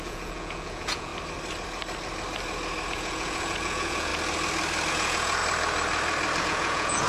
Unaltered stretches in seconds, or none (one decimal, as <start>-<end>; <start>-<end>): 1.1-2.9; 4.1-4.9; 5.4-6.4